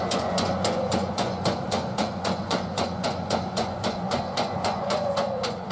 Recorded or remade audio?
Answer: remade